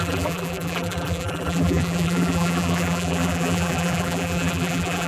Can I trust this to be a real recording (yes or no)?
no